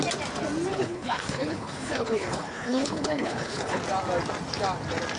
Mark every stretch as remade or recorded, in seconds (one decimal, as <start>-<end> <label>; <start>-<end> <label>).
0.0-0.7 recorded; 0.7-3.8 remade; 3.8-5.2 recorded